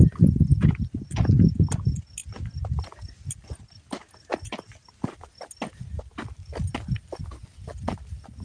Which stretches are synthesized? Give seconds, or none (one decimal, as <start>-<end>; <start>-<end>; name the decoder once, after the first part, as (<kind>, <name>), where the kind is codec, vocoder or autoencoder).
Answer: none